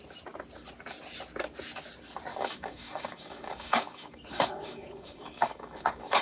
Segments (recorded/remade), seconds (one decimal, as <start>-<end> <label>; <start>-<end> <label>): 0.0-2.3 recorded; 2.3-6.2 remade